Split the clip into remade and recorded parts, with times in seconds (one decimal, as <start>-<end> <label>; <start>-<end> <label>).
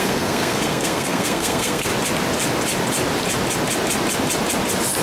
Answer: 0.0-1.9 remade; 1.9-5.0 recorded